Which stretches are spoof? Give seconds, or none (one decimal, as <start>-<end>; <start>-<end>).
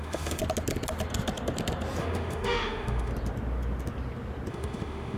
0.0-0.4; 2.0-3.1; 4.5-5.2